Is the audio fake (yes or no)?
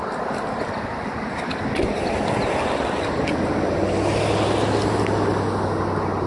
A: no